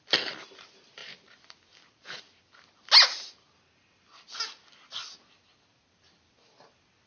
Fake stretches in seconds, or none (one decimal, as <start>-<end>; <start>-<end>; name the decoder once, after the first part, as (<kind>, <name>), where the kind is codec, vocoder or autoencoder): none